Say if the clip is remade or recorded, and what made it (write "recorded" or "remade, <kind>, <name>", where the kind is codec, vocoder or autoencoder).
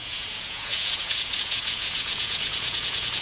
remade, vocoder, Vocos